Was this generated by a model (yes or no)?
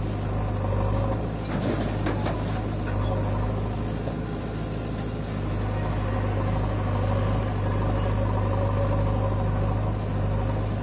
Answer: no